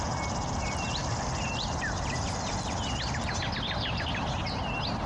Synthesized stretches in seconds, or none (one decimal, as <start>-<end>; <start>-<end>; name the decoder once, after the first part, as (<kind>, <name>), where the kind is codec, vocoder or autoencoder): none